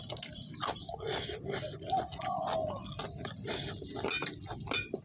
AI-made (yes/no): no